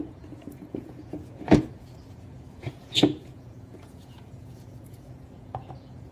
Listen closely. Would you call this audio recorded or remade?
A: remade